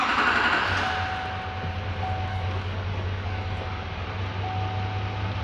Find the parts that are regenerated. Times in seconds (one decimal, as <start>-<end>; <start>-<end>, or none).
2.3-4.0